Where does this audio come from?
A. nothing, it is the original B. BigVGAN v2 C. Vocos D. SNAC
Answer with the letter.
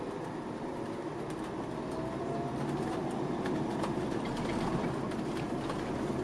A